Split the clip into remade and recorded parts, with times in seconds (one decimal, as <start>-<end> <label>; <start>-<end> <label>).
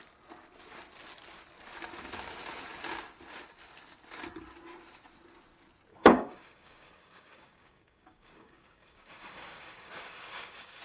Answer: 0.0-5.9 recorded; 5.9-10.8 remade